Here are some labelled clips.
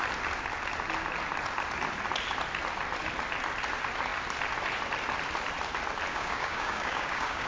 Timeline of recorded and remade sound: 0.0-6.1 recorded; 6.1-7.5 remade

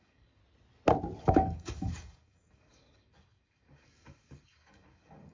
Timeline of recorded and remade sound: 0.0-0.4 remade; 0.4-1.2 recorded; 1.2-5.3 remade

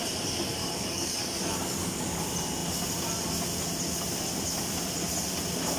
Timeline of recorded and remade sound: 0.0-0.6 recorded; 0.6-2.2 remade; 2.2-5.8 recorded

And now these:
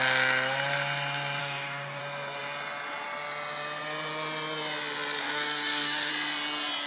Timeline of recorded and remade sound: 0.0-1.4 recorded; 1.4-2.0 remade; 2.0-5.2 recorded; 5.2-6.1 remade; 6.1-6.9 recorded

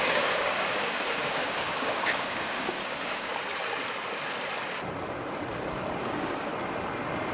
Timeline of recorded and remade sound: 0.0-3.3 remade; 3.3-6.0 recorded; 6.0-6.5 remade; 6.5-7.3 recorded

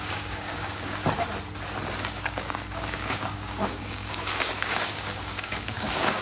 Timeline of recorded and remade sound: 0.0-1.0 remade; 1.0-2.0 recorded; 2.0-6.2 remade